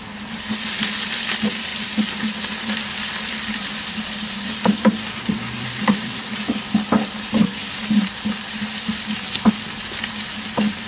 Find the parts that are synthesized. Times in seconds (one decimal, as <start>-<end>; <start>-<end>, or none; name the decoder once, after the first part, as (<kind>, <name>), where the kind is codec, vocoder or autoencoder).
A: none